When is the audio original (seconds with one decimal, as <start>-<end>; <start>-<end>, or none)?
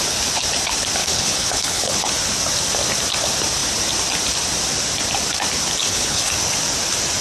0.0-1.0; 2.1-5.8; 6.3-7.2